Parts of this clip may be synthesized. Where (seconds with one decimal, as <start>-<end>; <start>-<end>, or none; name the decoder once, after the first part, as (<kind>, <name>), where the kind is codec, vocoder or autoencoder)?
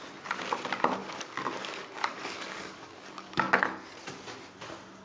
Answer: 1.0-3.5 (codec, DAC)